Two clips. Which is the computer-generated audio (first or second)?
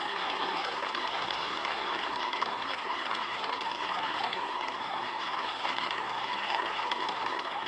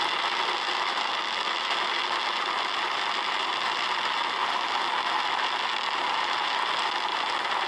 first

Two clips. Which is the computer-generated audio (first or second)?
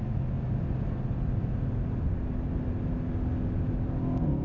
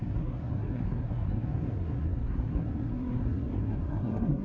second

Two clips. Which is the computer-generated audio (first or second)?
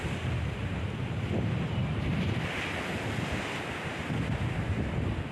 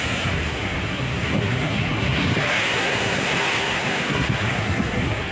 second